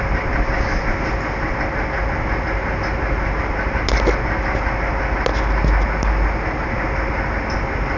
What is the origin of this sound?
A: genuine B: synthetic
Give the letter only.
A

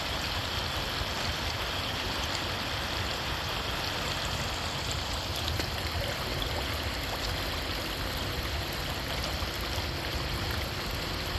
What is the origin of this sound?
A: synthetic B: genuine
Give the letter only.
B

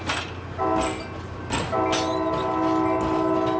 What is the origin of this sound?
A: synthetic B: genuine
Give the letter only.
B